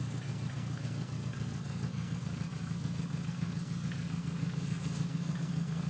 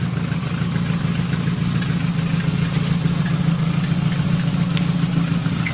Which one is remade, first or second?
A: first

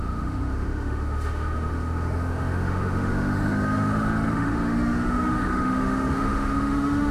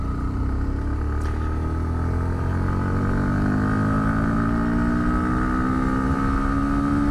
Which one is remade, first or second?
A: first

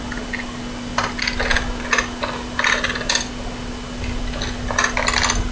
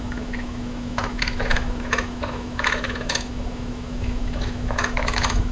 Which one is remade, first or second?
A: second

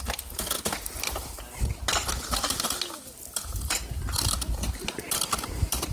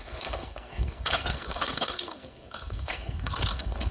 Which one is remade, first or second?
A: second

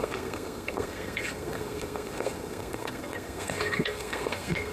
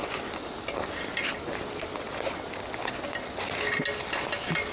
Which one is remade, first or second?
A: first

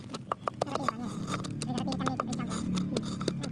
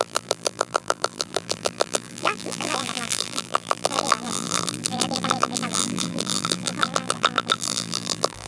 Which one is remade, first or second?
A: second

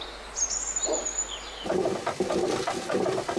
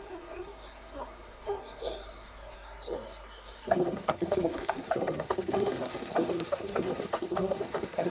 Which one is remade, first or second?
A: second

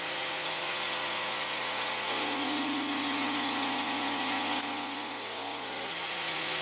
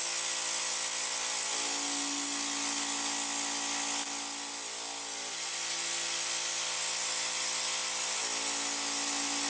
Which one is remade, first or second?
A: first